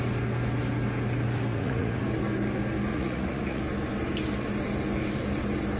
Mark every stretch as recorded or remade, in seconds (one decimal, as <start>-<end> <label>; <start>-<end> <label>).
0.0-1.5 recorded; 1.5-2.0 remade; 2.0-2.9 recorded; 2.9-3.6 remade; 3.6-5.8 recorded